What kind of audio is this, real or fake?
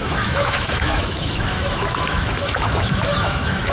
fake